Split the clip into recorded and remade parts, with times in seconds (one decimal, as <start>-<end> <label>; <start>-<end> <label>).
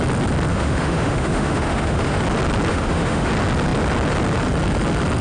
0.0-0.5 recorded; 0.5-2.2 remade; 2.2-2.7 recorded; 2.7-3.3 remade; 3.3-5.2 recorded